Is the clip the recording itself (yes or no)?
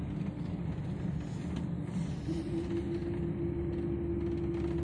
yes